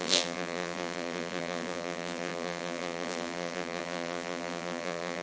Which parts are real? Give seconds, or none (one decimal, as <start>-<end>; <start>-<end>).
none